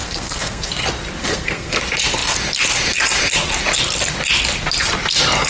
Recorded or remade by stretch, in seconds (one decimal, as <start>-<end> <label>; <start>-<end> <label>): 0.0-0.7 remade; 0.7-1.2 recorded; 1.2-1.8 remade; 1.8-5.5 recorded